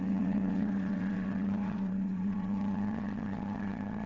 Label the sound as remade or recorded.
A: remade